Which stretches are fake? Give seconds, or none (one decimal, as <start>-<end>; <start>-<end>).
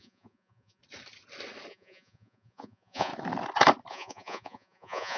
0.0-0.8; 1.7-3.1; 3.9-5.2